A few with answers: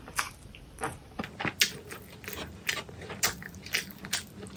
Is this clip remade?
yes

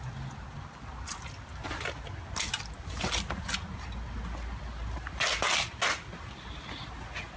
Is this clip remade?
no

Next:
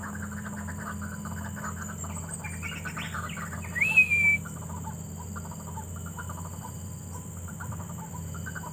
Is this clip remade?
no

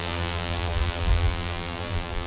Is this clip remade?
yes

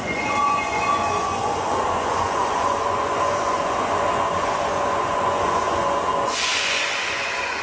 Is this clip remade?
yes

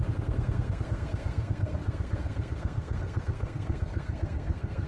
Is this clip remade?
yes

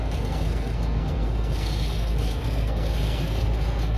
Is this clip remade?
yes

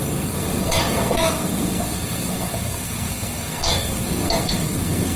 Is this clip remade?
yes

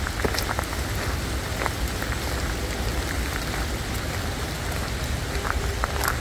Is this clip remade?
no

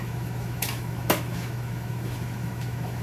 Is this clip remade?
yes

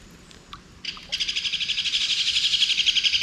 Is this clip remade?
no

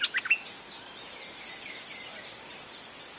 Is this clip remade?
no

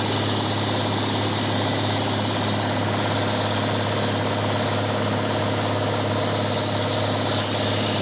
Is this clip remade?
no